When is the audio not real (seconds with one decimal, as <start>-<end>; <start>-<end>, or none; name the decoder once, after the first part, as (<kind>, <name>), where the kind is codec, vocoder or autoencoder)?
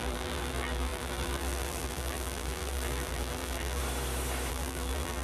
0.0-3.8 (vocoder, BigVGAN v2); 4.5-5.2